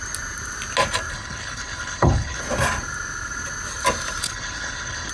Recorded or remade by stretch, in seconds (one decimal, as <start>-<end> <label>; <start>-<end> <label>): 0.0-1.1 recorded; 1.1-2.4 remade; 2.4-4.2 recorded; 4.2-5.1 remade